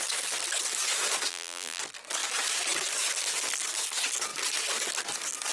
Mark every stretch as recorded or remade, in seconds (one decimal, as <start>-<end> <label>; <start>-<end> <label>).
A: 0.0-1.3 recorded; 1.3-1.8 remade; 1.8-5.5 recorded